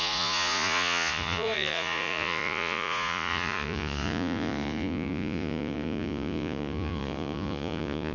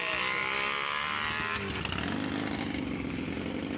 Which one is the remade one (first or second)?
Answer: first